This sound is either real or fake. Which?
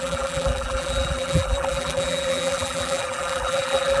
fake